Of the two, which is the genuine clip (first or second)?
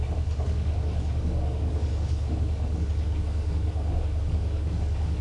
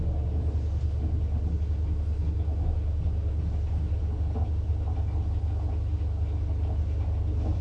second